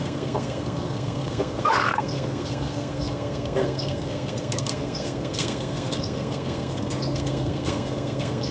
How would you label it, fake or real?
fake